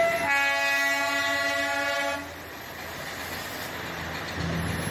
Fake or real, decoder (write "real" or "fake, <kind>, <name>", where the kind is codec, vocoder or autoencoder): real